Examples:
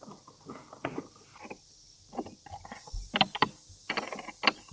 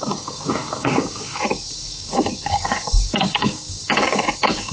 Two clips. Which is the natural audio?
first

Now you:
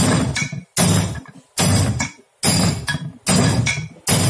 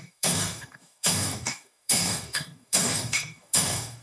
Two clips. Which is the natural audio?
first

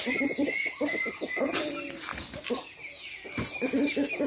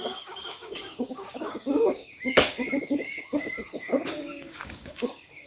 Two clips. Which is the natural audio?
first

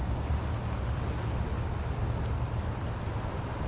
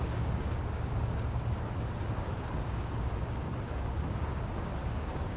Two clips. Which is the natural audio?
first